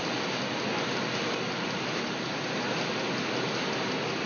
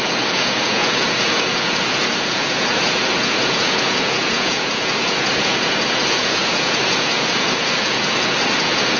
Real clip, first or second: first